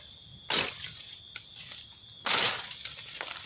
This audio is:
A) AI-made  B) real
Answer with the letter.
B